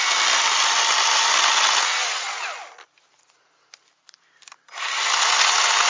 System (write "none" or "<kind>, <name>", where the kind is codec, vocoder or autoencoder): none